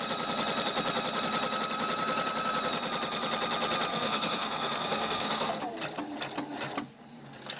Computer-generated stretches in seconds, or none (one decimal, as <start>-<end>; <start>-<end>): 3.9-5.6